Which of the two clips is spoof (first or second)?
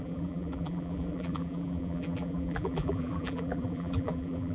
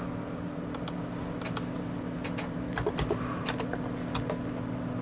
first